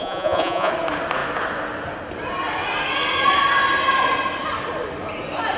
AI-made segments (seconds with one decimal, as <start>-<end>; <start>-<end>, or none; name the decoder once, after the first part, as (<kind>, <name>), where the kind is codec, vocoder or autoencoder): 0.0-0.7 (vocoder, Vocos)